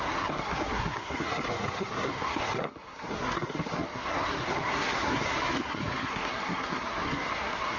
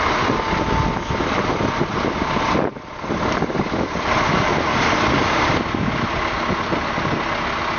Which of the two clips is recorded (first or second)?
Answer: second